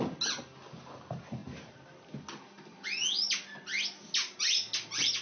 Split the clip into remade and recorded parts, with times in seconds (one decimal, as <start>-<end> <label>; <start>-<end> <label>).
0.0-5.2 recorded